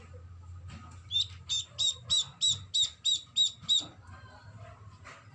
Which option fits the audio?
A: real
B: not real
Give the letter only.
A